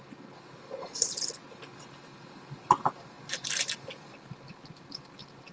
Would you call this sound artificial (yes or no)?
no